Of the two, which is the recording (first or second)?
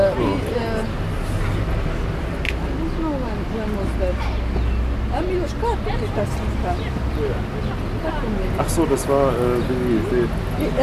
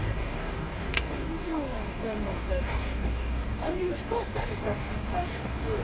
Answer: first